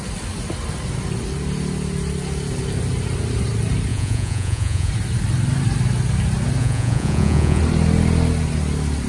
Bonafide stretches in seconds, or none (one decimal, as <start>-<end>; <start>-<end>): 0.0-3.9; 4.9-6.6; 7.6-9.1